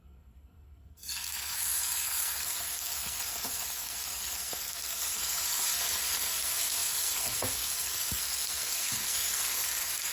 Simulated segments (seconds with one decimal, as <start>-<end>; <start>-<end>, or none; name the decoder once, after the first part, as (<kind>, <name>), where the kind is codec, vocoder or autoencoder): 0.0-10.1 (codec, SNAC)